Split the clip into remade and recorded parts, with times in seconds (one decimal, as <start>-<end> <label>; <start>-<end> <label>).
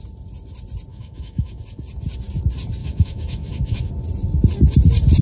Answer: 0.0-0.9 recorded; 0.9-1.6 remade; 1.6-2.8 recorded; 2.8-3.9 remade; 3.9-5.2 recorded